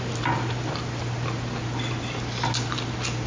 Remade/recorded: recorded